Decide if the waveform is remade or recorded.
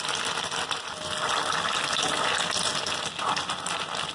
recorded